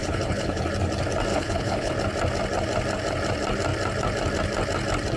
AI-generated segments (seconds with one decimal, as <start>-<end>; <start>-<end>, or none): 0.0-0.6; 1.3-1.9